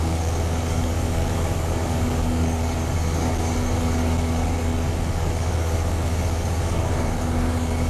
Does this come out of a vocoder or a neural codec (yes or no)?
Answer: yes